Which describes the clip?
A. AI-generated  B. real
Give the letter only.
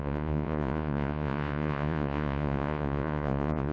A